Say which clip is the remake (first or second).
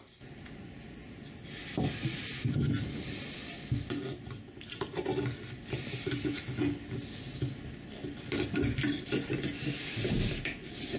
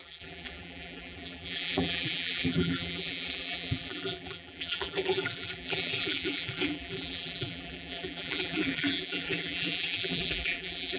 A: second